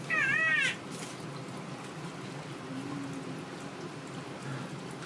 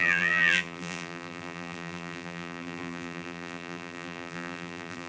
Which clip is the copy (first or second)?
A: second